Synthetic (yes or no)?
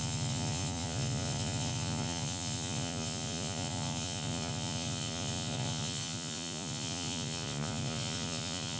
yes